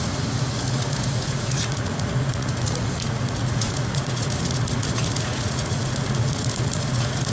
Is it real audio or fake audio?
fake